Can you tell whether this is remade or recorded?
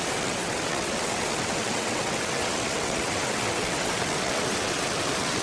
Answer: remade